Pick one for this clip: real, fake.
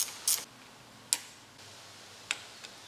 real